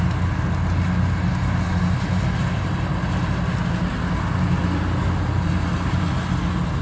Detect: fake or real real